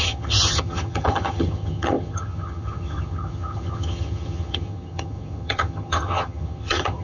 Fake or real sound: fake